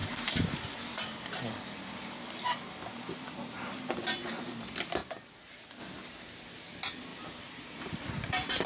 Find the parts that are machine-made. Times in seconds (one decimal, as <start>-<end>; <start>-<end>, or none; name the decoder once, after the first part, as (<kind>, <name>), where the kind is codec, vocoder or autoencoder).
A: 0.0-4.0 (vocoder, BigVGAN v2); 5.0-5.8; 7.1-8.7